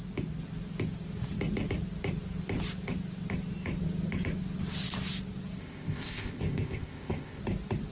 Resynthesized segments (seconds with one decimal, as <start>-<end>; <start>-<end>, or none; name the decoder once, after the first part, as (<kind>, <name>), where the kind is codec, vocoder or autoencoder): 5.6-7.4 (codec, ZipCodec)